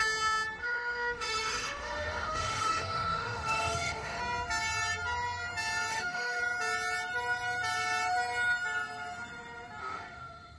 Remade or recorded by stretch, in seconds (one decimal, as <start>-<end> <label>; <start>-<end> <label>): 0.0-0.6 recorded; 0.6-4.2 remade; 4.2-5.9 recorded; 5.9-6.4 remade; 6.4-9.8 recorded; 9.8-10.6 remade